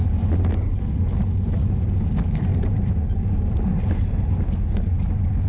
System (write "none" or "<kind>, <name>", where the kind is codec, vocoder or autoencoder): none